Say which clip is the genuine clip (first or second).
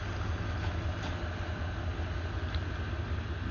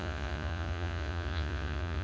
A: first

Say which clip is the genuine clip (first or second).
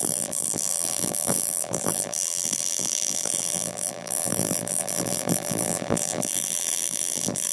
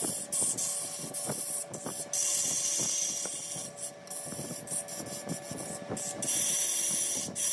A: second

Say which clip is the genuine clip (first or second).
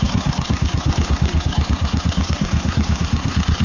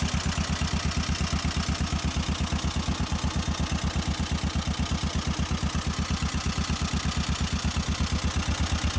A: second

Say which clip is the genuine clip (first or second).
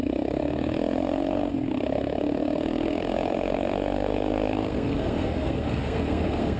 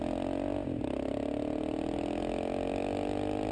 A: second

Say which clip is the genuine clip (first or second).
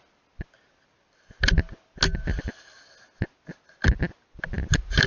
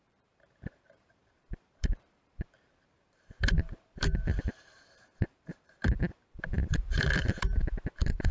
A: first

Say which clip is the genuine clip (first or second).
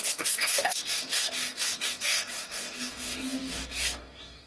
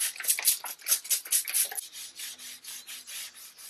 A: second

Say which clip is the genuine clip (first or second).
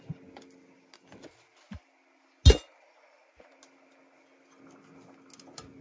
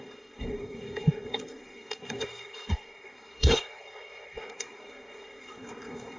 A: first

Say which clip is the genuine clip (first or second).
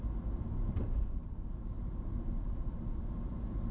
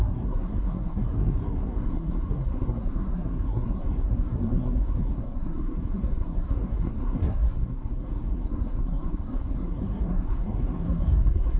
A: first